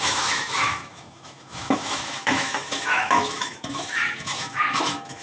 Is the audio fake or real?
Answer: fake